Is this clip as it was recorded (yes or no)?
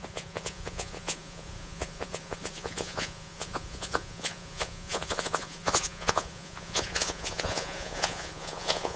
no